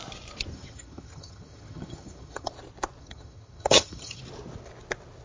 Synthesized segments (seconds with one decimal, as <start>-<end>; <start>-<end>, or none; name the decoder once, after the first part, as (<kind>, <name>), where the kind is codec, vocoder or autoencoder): 0.5-2.5 (vocoder, HiFi-GAN); 3.0-4.2